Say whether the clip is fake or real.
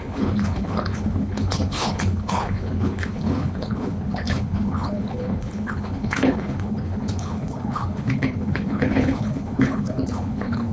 fake